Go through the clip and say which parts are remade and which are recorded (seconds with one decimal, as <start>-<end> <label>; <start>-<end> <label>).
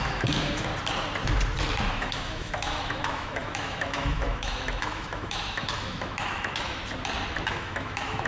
0.0-0.7 remade; 0.7-1.9 recorded; 1.9-6.8 remade; 6.8-7.5 recorded; 7.5-8.3 remade